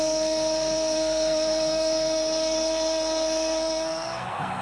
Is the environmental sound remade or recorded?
remade